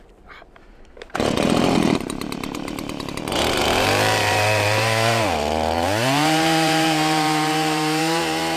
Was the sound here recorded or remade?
remade